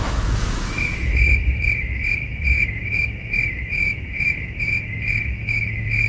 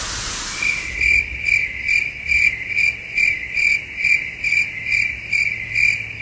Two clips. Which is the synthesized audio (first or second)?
first